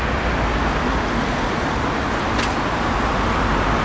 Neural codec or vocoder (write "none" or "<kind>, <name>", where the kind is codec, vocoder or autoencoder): none